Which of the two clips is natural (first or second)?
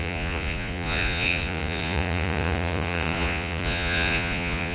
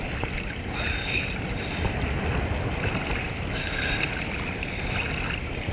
second